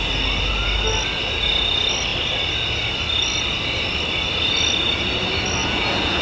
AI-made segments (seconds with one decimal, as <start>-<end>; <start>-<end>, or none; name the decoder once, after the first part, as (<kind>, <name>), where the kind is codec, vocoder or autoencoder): 5.6-6.2 (vocoder, Vocos)